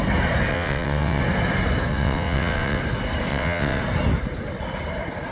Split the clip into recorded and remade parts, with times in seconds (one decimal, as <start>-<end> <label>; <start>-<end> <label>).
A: 0.0-0.5 recorded; 0.5-1.2 remade; 1.2-1.9 recorded; 1.9-2.8 remade; 2.8-3.3 recorded; 3.3-3.8 remade; 3.8-5.3 recorded